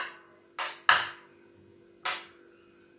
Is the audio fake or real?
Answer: real